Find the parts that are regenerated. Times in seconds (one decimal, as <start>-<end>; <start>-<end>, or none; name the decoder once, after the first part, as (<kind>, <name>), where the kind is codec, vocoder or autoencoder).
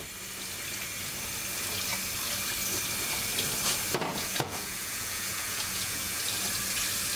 4.1-6.2 (vocoder, Vocos)